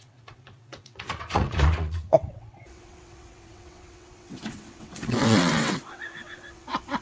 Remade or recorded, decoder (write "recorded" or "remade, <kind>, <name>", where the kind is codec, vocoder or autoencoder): remade, vocoder, WaveNeXt